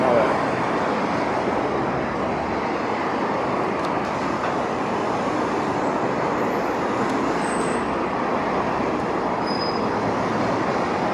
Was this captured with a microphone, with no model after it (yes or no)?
yes